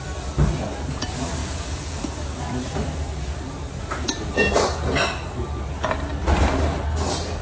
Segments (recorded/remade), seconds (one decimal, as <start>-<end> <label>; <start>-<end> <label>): 0.0-1.4 recorded; 1.4-2.4 remade; 2.4-7.4 recorded